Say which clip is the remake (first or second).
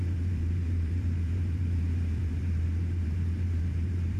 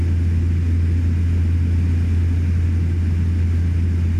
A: first